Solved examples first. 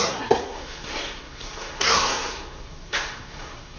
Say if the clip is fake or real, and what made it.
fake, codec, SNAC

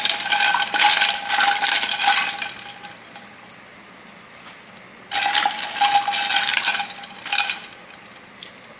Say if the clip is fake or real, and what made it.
real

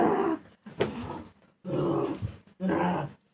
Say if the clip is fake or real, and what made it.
real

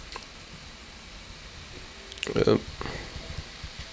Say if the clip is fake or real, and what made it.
real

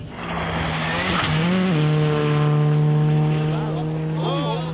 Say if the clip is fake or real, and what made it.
real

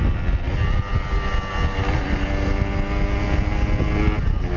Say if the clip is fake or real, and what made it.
real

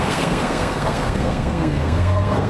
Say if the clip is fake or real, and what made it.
fake, codec, SNAC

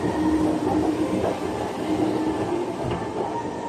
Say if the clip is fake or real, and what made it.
real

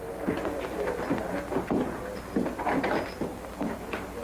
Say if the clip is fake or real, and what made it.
real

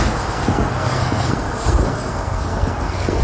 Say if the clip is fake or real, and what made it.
fake, codec, SNAC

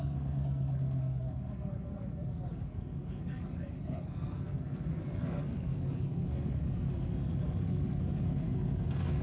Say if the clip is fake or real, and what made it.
fake, codec, SNAC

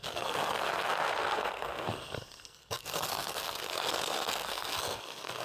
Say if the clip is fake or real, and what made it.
fake, codec, SNAC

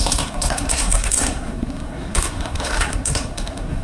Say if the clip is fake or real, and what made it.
fake, codec, SNAC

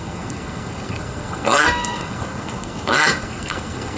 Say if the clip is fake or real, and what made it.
fake, codec, SNAC